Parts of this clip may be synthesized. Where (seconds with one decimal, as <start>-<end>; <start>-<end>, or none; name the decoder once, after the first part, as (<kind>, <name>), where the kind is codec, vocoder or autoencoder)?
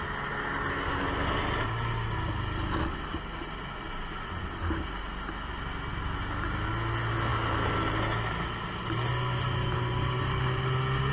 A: none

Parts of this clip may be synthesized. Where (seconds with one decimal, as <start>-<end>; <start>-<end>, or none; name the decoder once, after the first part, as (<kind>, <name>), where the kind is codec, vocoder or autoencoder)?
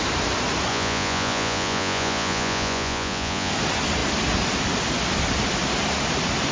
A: 0.7-3.5 (vocoder, Vocos)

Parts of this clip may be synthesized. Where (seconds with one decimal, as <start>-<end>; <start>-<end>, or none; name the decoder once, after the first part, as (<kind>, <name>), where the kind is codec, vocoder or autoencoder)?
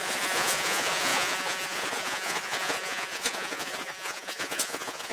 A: 0.0-5.1 (vocoder, Vocos)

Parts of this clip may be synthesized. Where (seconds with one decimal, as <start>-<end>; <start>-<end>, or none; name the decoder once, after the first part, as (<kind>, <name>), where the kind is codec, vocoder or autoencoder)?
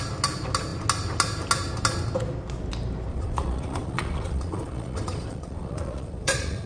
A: 3.1-6.7 (vocoder, Vocos)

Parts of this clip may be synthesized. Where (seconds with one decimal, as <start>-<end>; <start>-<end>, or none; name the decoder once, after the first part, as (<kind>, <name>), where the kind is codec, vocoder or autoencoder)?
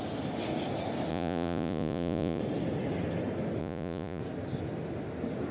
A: 1.1-2.4 (vocoder, Vocos); 3.6-4.2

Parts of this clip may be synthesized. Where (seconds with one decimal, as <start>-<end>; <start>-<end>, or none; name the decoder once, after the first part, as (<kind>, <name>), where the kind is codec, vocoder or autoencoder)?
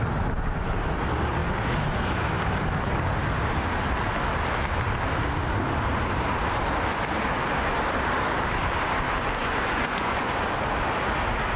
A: 9.4-10.3 (vocoder, Vocos)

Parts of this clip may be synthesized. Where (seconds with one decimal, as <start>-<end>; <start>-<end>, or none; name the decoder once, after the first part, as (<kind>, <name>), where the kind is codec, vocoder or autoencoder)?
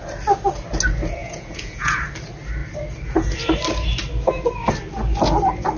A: 1.2-2.0 (vocoder, Vocos)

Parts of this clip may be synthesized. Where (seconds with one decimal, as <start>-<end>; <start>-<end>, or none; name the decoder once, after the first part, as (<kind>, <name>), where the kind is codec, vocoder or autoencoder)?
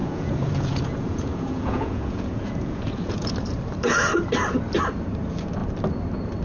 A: 0.0-3.3 (vocoder, Vocos)